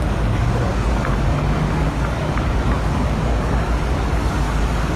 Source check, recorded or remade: remade